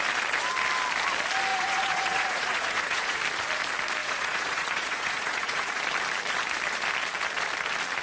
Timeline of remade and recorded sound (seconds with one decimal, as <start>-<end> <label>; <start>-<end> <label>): 0.0-1.5 recorded; 1.5-3.2 remade; 3.2-4.0 recorded; 4.0-5.8 remade; 5.8-8.0 recorded